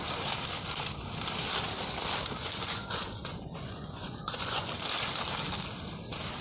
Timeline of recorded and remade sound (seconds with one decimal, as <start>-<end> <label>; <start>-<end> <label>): 0.0-2.4 recorded; 2.4-4.7 remade; 4.7-6.4 recorded